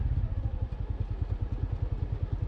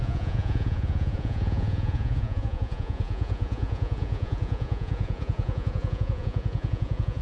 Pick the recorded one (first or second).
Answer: first